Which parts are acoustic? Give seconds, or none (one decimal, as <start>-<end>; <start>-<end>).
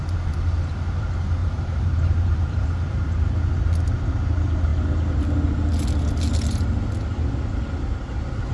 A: 0.0-1.4; 3.2-8.5